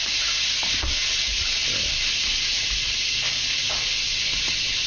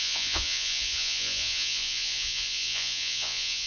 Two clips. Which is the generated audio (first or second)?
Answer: second